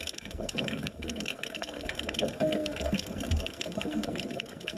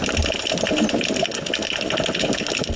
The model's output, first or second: first